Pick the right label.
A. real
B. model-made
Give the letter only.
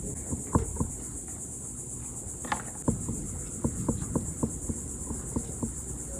A